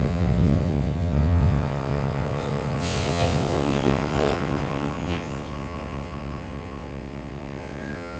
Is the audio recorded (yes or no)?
no